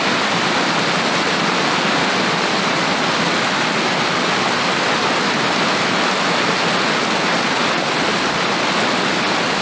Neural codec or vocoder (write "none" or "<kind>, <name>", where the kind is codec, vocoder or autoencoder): none